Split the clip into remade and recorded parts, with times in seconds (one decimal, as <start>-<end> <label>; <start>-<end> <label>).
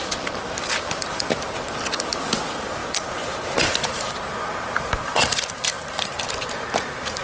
0.0-2.8 remade; 2.8-3.6 recorded; 3.6-7.2 remade